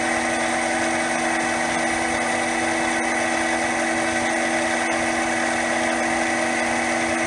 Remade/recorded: recorded